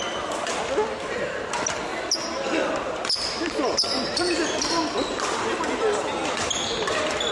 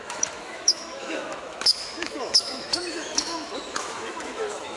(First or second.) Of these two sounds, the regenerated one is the second